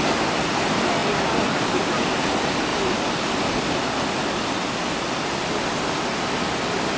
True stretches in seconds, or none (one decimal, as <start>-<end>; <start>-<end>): 0.0-7.0